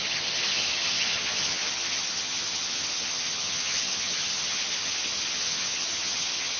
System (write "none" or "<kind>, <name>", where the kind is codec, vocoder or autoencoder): vocoder, HiFi-GAN